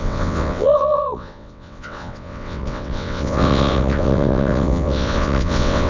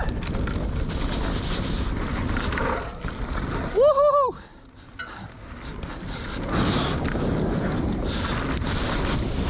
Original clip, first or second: second